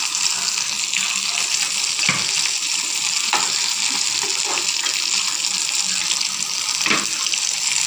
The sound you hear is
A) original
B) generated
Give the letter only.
A